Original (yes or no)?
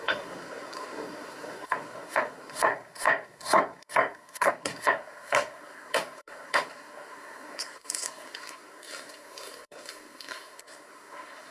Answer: no